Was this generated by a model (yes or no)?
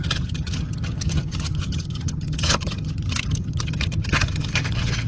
yes